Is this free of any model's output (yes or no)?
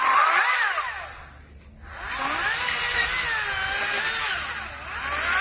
yes